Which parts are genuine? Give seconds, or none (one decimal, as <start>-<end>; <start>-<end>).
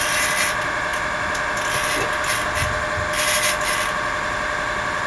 0.0-5.1